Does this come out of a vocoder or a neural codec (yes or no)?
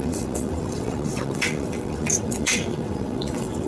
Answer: yes